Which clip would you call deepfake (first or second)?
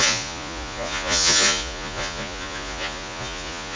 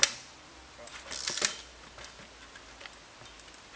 first